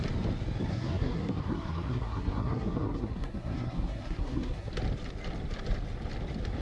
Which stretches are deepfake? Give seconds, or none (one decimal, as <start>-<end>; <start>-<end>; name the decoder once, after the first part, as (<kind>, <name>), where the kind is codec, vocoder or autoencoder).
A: 0.7-4.7 (codec, SNAC)